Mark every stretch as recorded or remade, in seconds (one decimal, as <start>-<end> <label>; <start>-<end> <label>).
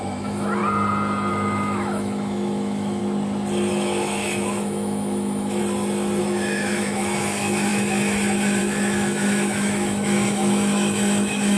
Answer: 0.0-0.6 remade; 0.6-1.3 recorded; 1.3-3.0 remade; 3.0-3.7 recorded; 3.7-5.6 remade; 5.6-6.2 recorded; 6.2-11.6 remade